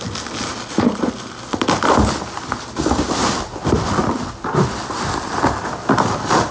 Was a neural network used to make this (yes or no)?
no